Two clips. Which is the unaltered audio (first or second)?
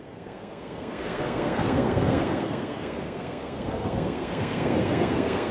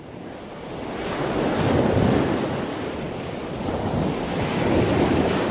second